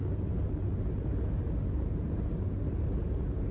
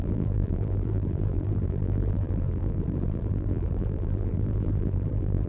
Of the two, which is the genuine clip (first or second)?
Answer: first